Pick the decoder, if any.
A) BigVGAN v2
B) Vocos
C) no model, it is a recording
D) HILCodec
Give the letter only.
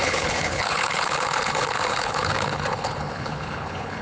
D